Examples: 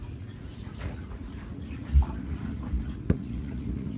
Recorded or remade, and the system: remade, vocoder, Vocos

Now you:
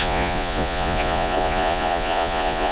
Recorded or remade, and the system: remade, vocoder, Vocos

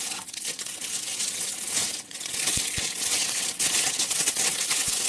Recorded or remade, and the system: remade, vocoder, WaveNeXt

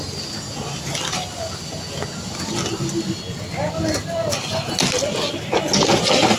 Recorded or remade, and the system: recorded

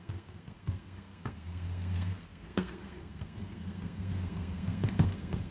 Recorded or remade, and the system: remade, codec, SNAC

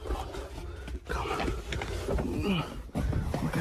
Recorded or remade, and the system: recorded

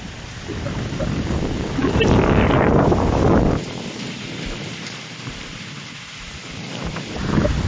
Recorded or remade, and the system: remade, vocoder, BigVGAN v2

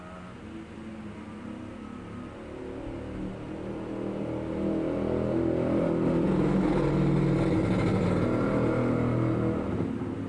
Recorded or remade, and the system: recorded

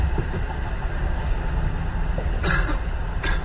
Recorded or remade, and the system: recorded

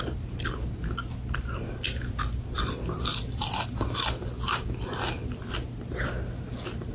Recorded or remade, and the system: recorded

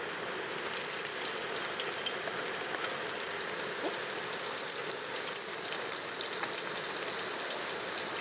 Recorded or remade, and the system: recorded